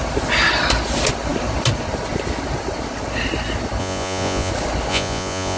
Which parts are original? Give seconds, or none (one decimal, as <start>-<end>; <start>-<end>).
0.0-3.8; 4.5-4.9